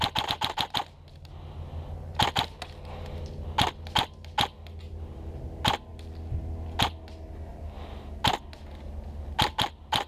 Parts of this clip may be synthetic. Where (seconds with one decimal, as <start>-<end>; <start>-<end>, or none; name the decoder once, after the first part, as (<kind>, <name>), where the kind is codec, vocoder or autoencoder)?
none